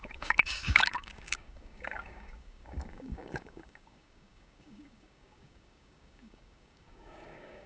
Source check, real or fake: fake